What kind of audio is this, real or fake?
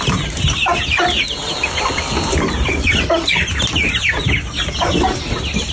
real